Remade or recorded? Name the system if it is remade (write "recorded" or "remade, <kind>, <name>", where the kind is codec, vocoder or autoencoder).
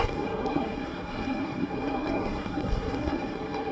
remade, codec, SNAC